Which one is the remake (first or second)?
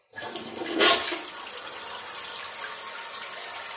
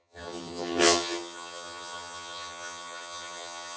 second